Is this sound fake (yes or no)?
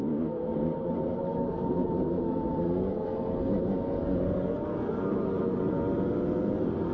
no